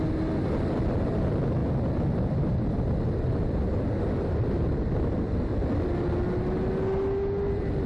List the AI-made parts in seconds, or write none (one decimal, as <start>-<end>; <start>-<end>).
0.0-1.6; 2.2-5.5; 7.5-7.9